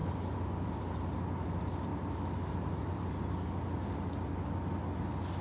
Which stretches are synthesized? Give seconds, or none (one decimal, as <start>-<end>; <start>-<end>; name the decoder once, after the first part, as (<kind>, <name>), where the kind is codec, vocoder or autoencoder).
0.0-0.7 (autoencoder, DAC-VAE); 1.9-2.5

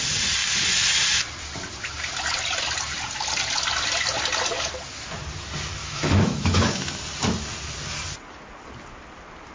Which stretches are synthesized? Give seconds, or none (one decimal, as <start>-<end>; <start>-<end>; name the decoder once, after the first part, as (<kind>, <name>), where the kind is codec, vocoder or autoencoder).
5.8-7.0 (autoencoder, DAC-VAE)

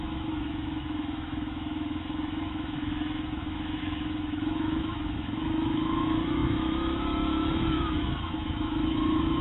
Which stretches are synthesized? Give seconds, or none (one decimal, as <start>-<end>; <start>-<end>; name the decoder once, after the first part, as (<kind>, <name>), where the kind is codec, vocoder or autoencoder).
0.0-9.4 (autoencoder, DAC-VAE)

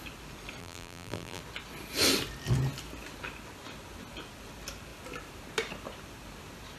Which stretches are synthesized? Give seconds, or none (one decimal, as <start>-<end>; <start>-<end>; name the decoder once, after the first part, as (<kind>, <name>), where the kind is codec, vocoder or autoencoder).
0.6-1.4 (vocoder, BigVGAN v2)